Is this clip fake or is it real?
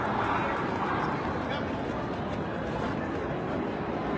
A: real